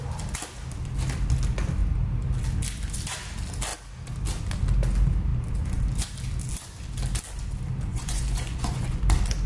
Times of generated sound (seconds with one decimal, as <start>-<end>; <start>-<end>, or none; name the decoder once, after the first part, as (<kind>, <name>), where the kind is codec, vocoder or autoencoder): 7.9-9.0 (vocoder, Vocos)